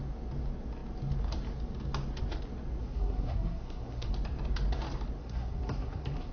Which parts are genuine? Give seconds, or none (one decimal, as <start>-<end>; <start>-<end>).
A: 0.0-2.8; 4.1-5.2